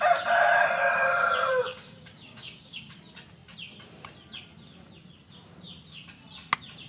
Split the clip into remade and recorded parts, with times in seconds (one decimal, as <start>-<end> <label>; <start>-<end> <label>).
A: 0.0-1.6 recorded; 1.6-3.0 remade; 3.0-6.9 recorded